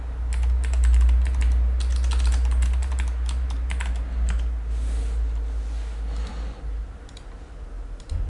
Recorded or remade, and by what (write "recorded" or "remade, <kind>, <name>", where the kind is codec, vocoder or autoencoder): recorded